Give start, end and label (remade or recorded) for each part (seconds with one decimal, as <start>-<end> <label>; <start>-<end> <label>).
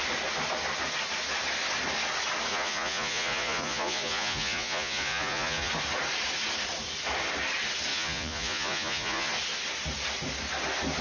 0.0-2.5 recorded; 2.5-5.7 remade; 5.7-7.9 recorded; 7.9-9.3 remade; 9.3-11.0 recorded